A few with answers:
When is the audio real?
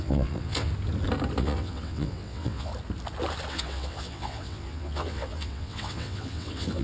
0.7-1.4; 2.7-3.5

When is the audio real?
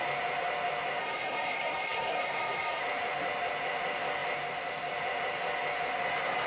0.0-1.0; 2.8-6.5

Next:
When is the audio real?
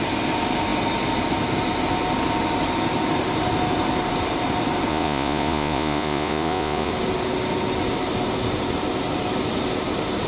0.0-4.9; 6.9-10.3